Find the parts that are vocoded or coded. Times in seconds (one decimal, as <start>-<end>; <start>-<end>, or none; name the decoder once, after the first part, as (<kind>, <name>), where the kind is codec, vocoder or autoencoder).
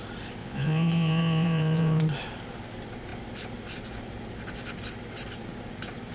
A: 0.4-2.0 (vocoder, Vocos)